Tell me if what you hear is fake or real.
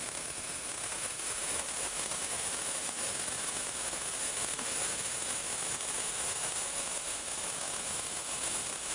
fake